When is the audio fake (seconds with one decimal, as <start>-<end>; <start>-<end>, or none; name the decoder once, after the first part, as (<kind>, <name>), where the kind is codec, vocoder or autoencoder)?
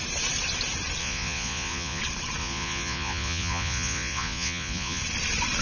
1.0-2.0 (vocoder, Vocos); 2.4-5.0